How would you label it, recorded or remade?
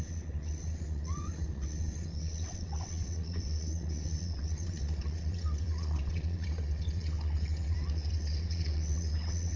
remade